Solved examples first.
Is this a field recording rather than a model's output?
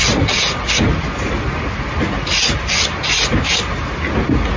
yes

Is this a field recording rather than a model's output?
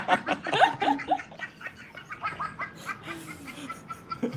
yes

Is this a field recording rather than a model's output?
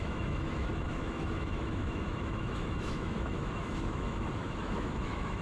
no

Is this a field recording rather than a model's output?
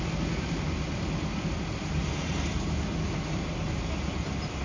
yes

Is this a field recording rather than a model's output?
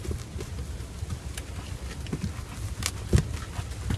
yes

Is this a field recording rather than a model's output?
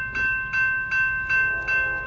yes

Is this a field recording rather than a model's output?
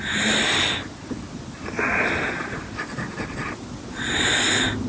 yes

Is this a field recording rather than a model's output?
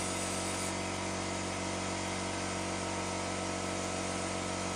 yes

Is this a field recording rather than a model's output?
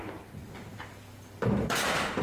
yes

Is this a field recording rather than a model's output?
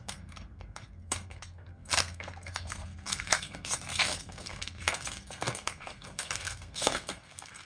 no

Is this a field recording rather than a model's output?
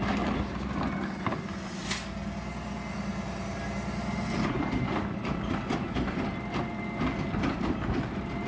yes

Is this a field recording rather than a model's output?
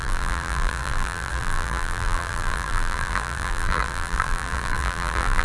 no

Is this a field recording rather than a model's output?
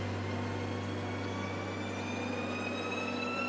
yes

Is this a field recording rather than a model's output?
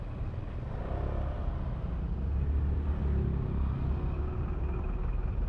yes